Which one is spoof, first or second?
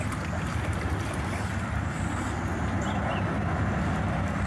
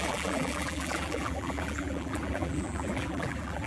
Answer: second